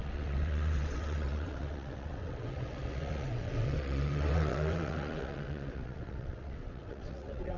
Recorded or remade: remade